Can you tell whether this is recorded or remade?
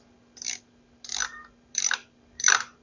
remade